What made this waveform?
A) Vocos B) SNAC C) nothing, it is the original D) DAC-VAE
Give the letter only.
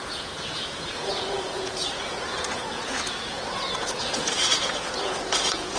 A